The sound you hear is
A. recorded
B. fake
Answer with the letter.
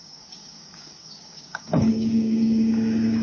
B